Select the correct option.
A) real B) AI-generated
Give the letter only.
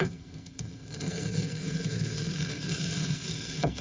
B